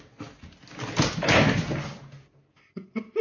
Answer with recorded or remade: recorded